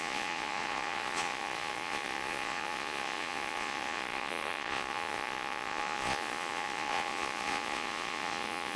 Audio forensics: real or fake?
fake